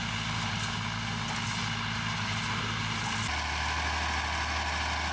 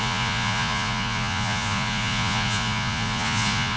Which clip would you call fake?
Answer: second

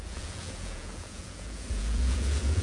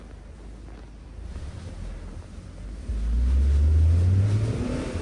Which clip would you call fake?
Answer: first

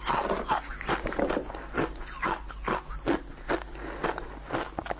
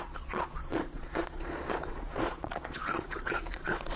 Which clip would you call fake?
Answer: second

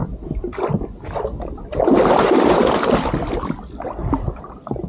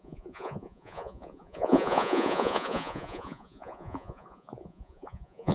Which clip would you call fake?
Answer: second